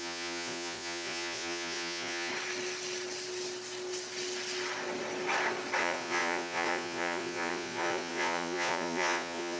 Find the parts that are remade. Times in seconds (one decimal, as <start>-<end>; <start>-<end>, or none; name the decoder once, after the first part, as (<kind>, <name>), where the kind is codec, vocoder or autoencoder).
0.0-2.3 (vocoder, Vocos); 5.8-9.6

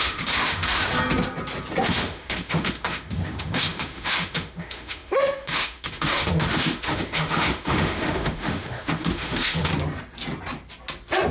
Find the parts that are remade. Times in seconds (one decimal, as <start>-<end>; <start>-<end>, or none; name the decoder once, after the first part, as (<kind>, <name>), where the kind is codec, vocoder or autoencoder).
0.0-0.9 (autoencoder, DAC-VAE); 1.8-9.7

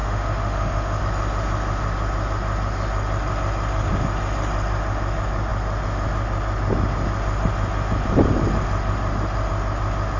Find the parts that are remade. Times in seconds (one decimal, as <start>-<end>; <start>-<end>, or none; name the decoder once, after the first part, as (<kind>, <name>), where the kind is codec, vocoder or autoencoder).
0.0-1.0 (autoencoder, DAC-VAE)

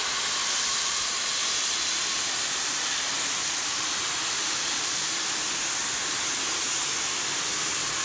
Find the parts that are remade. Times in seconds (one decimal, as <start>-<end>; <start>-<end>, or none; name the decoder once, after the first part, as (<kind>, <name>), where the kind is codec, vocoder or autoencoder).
0.4-5.2 (vocoder, BigVGAN v2)

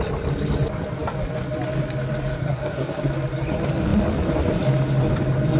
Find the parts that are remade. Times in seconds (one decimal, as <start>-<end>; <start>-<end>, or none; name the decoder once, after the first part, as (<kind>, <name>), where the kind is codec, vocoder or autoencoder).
2.4-3.1 (codec, SNAC)

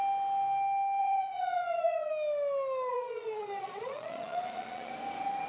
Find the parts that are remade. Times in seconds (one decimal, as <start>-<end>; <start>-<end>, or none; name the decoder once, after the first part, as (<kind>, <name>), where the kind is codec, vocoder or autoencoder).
1.0-2.1 (vocoder, Vocos); 2.9-4.9